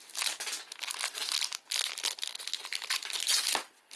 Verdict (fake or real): real